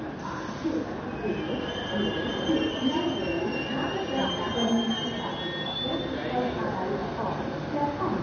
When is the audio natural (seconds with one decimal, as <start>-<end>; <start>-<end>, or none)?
0.0-8.2

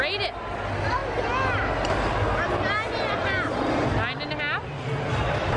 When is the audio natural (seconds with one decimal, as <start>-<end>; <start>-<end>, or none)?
0.0-5.6

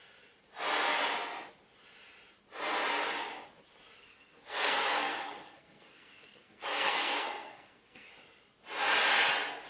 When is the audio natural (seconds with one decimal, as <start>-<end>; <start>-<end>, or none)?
0.0-4.0; 8.1-9.7

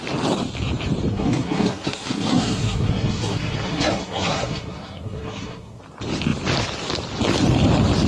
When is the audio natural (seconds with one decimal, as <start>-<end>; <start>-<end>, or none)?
0.0-1.1; 5.8-8.1

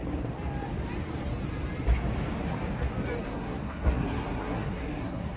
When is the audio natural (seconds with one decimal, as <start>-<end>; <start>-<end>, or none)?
0.0-3.2